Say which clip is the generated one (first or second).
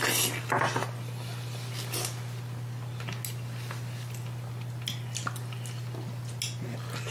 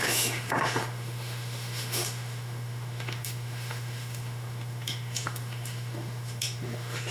second